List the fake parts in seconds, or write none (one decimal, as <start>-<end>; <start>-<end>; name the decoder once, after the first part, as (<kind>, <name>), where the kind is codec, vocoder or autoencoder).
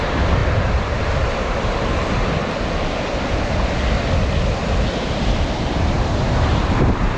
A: 0.0-2.2 (vocoder, BigVGAN v2); 5.7-7.2